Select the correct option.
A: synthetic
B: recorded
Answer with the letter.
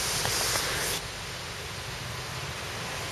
B